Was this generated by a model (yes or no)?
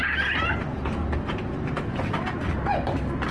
no